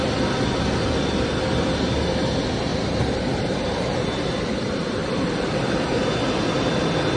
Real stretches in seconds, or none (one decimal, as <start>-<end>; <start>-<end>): 0.0-2.7; 5.4-7.2